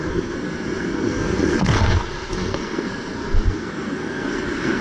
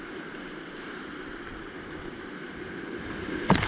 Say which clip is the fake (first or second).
first